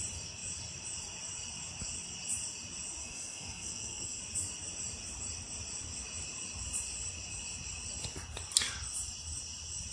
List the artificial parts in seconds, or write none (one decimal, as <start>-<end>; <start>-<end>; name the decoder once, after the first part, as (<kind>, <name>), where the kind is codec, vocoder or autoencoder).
3.0-4.2 (codec, SNAC)